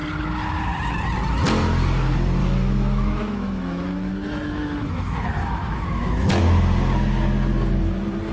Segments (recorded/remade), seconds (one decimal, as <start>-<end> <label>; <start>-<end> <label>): 0.0-2.4 recorded; 2.4-6.4 remade; 6.4-8.3 recorded